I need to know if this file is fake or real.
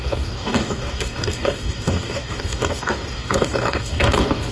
fake